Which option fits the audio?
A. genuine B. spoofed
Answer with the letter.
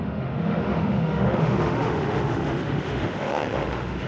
B